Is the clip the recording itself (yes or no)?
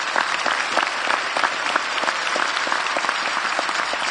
no